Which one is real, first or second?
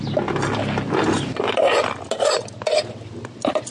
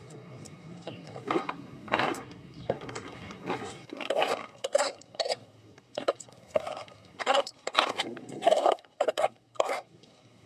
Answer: first